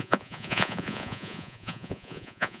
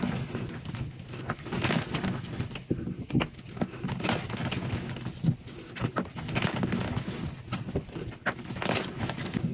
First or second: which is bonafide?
second